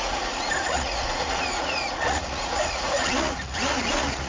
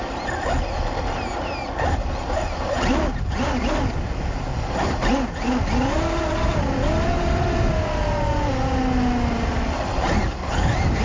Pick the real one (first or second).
second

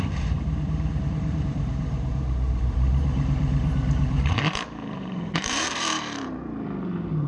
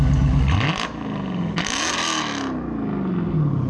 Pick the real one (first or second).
second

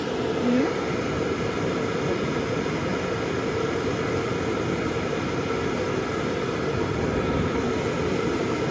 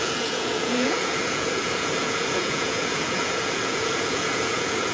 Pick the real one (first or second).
first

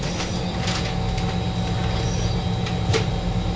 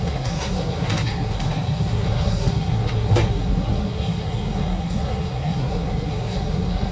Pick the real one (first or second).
first